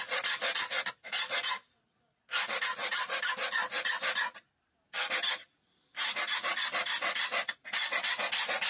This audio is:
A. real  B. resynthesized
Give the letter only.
A